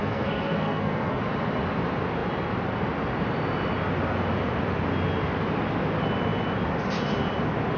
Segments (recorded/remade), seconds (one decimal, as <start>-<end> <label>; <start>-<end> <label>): 0.0-1.2 remade; 1.2-7.8 recorded